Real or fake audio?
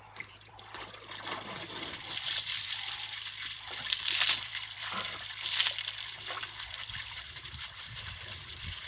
fake